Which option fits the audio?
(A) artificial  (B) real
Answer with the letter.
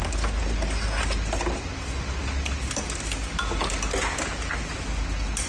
B